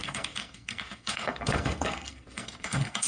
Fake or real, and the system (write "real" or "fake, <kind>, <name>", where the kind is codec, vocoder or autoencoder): fake, codec, SNAC